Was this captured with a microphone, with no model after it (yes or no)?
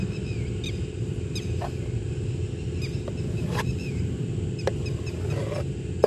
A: yes